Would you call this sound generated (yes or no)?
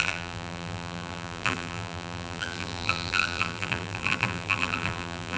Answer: yes